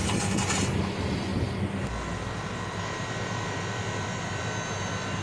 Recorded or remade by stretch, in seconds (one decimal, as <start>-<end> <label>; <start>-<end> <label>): 0.0-5.2 recorded